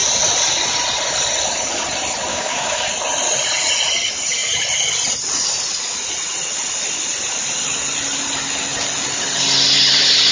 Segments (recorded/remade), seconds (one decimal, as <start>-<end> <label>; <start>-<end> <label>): 0.0-2.3 recorded; 2.3-2.9 remade; 2.9-10.3 recorded